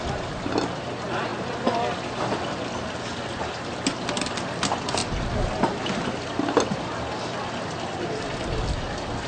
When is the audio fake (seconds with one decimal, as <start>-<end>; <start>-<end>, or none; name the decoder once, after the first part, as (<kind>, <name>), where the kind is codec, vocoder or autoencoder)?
none